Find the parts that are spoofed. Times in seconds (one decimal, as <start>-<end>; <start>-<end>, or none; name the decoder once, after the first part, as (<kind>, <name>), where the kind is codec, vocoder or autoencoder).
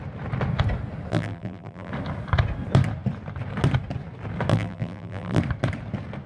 1.1-1.9 (vocoder, BigVGAN v2); 4.5-5.4